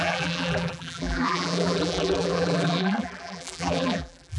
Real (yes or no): no